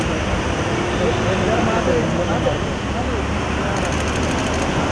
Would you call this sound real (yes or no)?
yes